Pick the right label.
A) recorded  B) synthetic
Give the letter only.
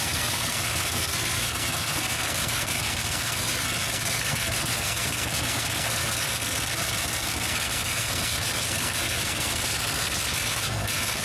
B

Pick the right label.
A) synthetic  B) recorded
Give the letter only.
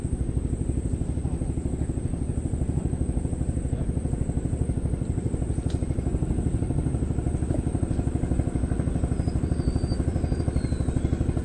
B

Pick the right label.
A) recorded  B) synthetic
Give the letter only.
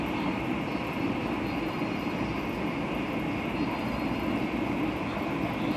A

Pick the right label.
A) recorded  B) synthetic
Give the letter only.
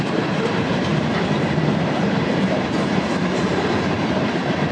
B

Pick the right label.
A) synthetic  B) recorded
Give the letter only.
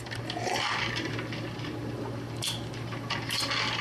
A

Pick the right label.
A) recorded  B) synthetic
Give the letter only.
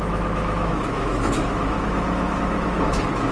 B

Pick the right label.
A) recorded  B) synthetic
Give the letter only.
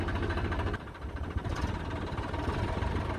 A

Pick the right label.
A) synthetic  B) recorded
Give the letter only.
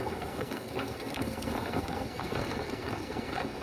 A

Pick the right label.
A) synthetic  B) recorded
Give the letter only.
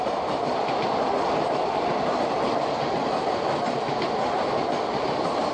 B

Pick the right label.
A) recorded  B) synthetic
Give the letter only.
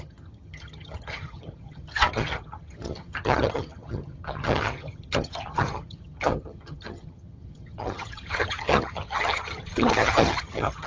B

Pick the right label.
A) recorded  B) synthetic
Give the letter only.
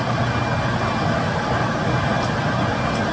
A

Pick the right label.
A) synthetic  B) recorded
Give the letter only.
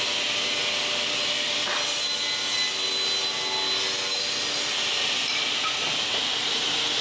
B